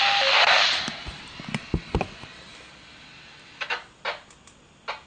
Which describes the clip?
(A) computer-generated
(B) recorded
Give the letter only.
B